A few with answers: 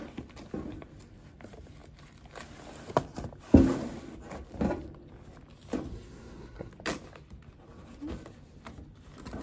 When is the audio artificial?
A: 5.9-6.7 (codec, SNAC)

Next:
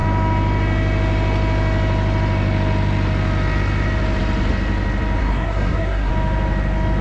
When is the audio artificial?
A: 5.2-6.1 (codec, SNAC)

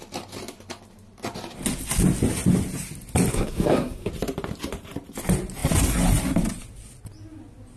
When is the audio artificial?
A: 3.3-4.1 (codec, SNAC)

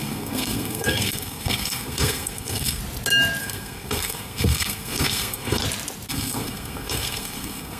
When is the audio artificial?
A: 0.0-2.8 (codec, SNAC); 3.4-5.6; 6.1-7.8

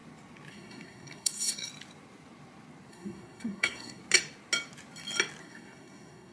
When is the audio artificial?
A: 0.5-1.7 (codec, SNAC); 2.9-4.0; 5.4-6.3

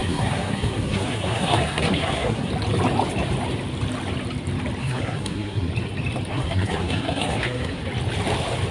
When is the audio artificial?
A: 0.0-2.5 (codec, SNAC); 4.8-5.7; 6.3-7.8

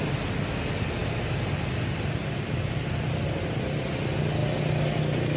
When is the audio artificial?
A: none

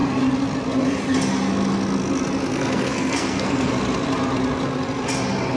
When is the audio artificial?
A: 2.5-3.7 (codec, SNAC)